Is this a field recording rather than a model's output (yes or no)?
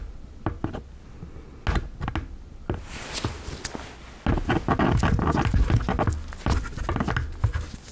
yes